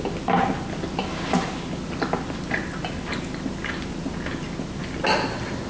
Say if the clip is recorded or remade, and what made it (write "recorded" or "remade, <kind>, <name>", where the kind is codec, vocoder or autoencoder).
recorded